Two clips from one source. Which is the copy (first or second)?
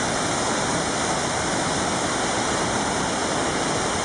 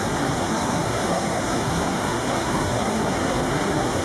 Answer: second